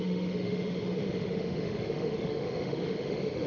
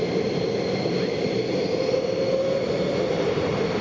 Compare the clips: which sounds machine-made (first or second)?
first